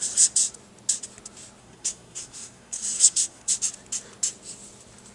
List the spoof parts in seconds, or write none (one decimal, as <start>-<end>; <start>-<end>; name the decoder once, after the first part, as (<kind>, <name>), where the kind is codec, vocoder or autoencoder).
1.6-3.5 (codec, SNAC)